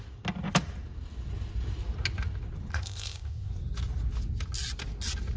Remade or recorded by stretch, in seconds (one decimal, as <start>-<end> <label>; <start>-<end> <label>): 0.0-2.7 recorded; 2.7-3.5 remade; 3.5-5.4 recorded